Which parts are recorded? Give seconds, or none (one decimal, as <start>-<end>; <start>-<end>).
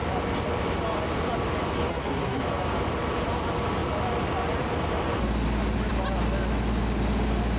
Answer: 0.0-1.9; 2.4-7.6